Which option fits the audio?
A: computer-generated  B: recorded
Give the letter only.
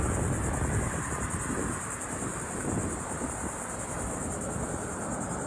B